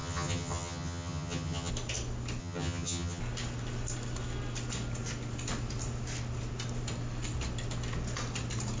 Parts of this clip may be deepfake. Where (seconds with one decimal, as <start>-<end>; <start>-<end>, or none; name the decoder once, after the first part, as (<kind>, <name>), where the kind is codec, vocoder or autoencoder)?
0.0-1.7 (vocoder, HiFi-GAN); 2.4-3.2